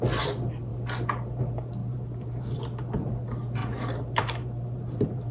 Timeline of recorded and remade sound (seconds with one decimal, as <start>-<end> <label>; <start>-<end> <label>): 0.0-1.8 recorded; 1.8-2.4 remade; 2.4-3.6 recorded; 3.6-5.3 remade